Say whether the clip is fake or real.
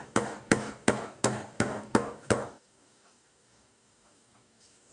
fake